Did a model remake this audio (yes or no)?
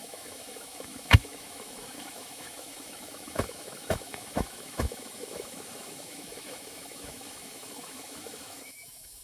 yes